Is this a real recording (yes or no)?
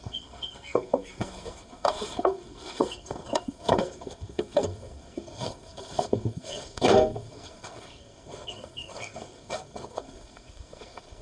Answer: no